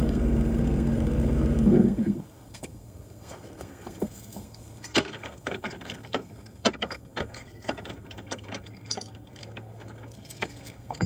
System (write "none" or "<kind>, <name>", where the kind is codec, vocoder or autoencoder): codec, SNAC